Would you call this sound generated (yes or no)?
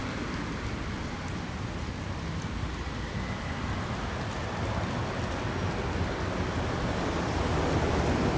no